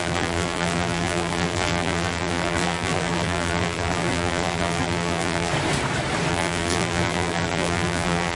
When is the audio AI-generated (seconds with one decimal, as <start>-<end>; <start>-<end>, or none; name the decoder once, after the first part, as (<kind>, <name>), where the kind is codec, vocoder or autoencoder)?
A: 0.0-5.5 (vocoder, BigVGAN v2); 6.3-8.3